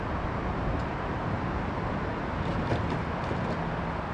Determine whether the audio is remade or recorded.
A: recorded